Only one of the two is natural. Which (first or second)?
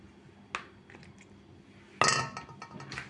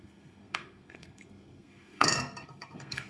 first